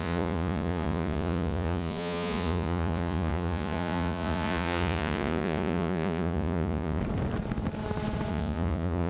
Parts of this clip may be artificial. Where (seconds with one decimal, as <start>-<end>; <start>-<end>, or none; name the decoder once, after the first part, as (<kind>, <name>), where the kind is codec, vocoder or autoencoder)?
0.0-7.0 (vocoder, Vocos); 8.3-9.1